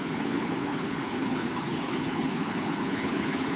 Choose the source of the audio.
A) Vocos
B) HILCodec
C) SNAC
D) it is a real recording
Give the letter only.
B